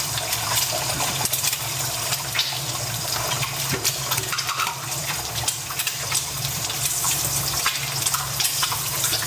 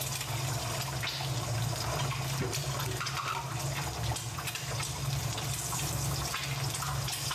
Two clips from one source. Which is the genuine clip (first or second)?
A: second